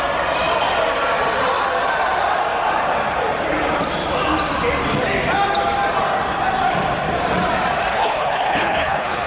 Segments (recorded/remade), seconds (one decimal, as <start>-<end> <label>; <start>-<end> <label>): 0.0-7.9 recorded; 7.9-9.3 remade